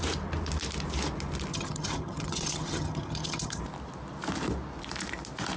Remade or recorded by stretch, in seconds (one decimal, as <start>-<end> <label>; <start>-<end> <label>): 0.0-1.5 recorded; 1.5-3.6 remade; 3.6-5.6 recorded